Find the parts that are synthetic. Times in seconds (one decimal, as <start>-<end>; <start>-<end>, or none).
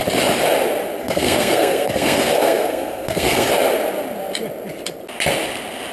1.0-3.5